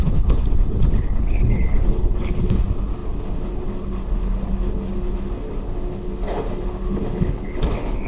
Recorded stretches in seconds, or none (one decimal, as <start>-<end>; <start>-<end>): none